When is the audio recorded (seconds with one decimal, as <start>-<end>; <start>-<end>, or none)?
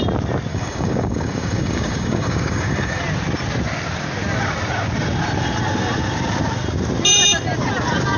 0.0-0.5; 3.0-8.2